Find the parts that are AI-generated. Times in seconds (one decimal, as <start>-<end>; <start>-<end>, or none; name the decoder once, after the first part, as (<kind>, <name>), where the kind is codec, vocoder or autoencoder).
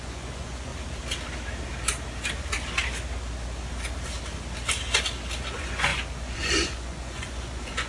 0.0-0.7 (vocoder, Vocos); 5.4-7.9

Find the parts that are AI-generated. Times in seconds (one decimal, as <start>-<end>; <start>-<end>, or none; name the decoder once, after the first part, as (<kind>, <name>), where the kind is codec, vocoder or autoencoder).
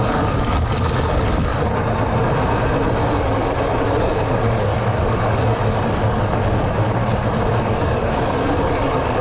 0.0-1.5 (codec, DAC); 4.0-7.0; 7.7-9.2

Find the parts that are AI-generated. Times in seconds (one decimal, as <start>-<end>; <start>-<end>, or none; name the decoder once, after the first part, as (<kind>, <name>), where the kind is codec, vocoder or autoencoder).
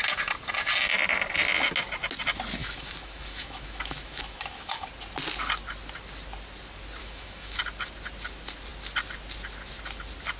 2.6-4.9 (autoencoder, DAC-VAE); 7.0-7.6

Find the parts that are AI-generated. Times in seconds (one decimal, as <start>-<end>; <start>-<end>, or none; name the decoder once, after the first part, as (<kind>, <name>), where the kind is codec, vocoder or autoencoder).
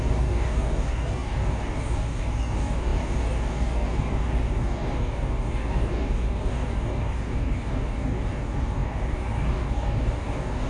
0.0-10.7 (codec, DAC)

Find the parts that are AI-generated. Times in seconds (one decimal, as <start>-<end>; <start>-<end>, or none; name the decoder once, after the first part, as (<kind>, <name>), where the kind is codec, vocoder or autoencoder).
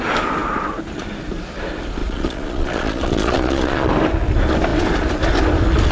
2.0-3.9 (vocoder, Vocos)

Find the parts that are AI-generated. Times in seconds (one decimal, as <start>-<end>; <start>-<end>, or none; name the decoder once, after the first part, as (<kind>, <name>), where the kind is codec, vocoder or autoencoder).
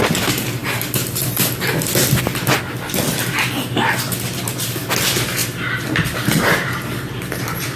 5.4-7.8 (vocoder, BigVGAN v2)